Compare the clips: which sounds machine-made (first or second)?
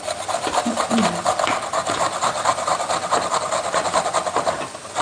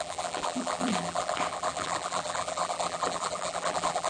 second